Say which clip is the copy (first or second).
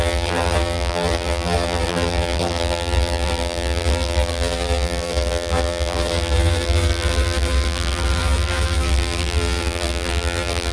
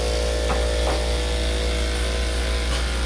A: first